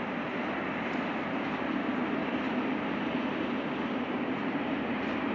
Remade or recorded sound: recorded